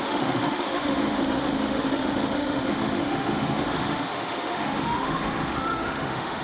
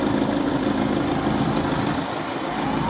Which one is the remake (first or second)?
first